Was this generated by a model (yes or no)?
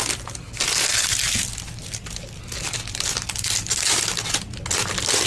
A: no